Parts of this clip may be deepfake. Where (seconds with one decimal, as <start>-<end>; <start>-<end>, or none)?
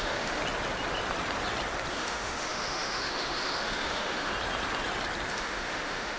0.0-0.4; 1.9-4.3; 5.3-6.2